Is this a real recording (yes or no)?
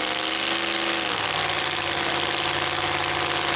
yes